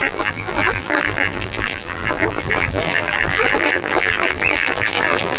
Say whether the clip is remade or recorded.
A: remade